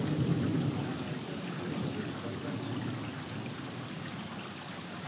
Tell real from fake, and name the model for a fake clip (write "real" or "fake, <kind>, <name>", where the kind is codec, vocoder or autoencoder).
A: real